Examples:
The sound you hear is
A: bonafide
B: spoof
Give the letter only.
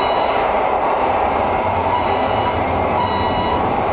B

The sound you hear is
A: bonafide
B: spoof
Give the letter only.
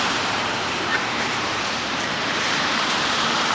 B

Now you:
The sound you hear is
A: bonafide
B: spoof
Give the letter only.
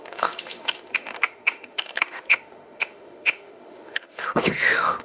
B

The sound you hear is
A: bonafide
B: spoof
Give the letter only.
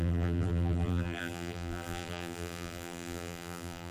B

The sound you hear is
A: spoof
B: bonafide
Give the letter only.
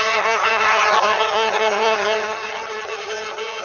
A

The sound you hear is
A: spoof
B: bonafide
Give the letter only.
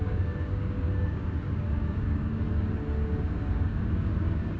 A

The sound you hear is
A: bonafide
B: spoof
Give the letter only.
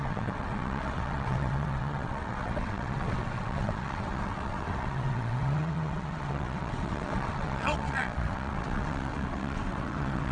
B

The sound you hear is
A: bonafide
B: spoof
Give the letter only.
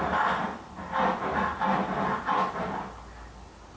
A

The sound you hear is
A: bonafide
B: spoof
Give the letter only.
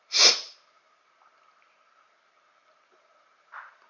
A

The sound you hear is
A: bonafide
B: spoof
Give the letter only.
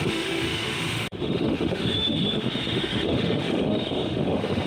B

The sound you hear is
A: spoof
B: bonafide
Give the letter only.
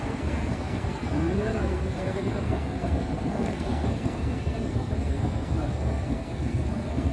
A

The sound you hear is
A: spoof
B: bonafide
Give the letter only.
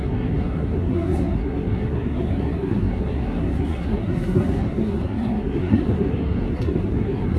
A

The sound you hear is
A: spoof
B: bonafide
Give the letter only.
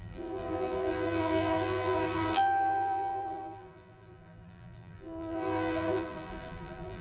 A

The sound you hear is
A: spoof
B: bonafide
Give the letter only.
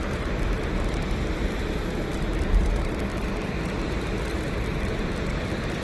B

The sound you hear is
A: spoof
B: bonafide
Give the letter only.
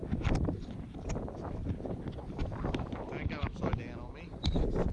B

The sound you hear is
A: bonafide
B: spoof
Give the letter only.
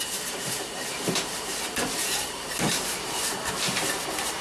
B